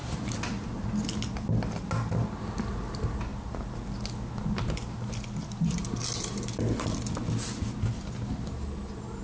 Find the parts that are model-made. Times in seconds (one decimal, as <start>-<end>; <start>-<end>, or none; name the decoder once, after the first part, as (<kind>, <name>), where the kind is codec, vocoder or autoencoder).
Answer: none